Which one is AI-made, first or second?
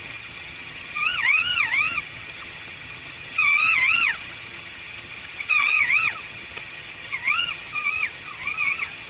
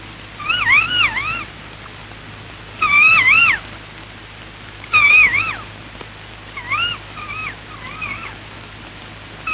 first